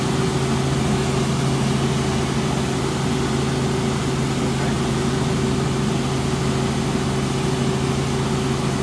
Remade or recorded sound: recorded